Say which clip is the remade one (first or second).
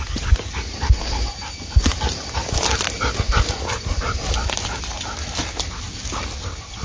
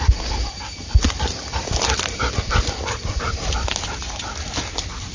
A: second